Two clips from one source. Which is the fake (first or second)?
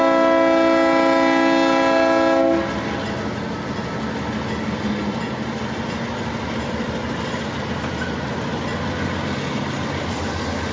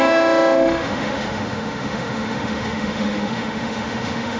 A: second